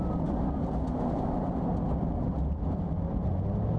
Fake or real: real